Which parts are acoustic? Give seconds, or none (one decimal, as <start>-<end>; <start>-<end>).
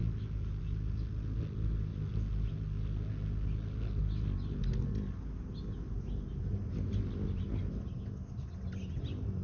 0.0-9.4